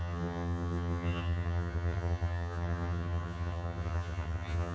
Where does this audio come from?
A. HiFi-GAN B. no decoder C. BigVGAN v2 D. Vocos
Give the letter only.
A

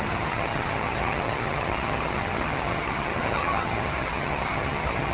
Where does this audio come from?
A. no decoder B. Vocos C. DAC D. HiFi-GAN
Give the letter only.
D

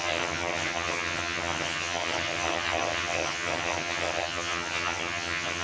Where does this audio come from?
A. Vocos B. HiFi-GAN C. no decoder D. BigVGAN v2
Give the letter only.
B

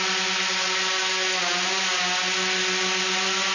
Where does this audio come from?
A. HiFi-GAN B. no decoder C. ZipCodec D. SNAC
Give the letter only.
B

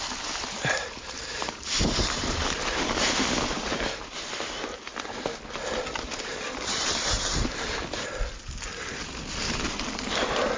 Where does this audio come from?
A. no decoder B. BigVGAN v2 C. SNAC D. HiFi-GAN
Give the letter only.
A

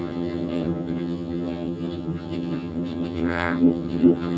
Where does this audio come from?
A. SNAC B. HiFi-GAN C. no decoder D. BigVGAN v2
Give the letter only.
B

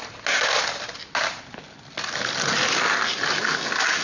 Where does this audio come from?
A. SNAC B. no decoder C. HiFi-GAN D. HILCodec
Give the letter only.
B